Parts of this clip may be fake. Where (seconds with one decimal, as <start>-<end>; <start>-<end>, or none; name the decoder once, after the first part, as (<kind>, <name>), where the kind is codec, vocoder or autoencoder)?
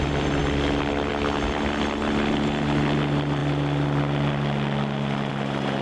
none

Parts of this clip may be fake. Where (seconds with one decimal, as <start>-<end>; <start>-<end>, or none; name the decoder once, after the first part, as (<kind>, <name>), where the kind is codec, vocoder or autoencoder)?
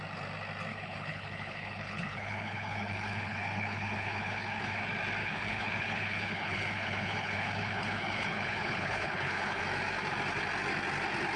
0.7-4.8 (codec, HILCodec); 5.2-9.6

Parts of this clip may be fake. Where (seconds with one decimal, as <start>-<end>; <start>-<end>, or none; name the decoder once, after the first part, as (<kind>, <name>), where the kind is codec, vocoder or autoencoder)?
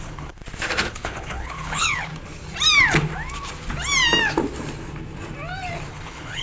0.0-0.4 (codec, HILCodec); 0.9-2.1; 5.9-6.4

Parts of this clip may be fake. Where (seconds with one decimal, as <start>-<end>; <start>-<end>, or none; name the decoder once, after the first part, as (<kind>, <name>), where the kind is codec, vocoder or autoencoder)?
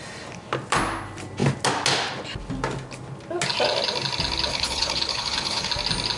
4.5-5.7 (codec, HILCodec)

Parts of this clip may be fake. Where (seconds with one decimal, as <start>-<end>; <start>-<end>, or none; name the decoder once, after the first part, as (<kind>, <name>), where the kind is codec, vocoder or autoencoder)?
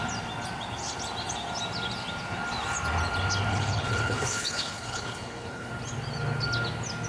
3.5-5.7 (codec, HILCodec)